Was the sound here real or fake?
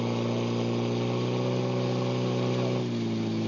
real